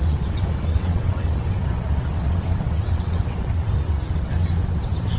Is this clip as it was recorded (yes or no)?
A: no